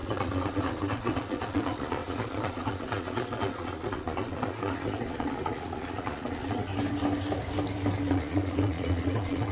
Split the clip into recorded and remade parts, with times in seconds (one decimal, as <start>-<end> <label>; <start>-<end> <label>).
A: 0.0-6.7 remade; 6.7-8.1 recorded; 8.1-9.5 remade